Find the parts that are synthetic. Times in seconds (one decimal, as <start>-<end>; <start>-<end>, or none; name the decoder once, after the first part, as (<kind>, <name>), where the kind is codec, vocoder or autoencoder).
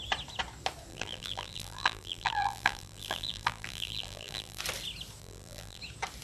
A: 0.9-4.6 (vocoder, BigVGAN v2); 5.2-5.8